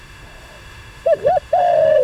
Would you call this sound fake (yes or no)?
yes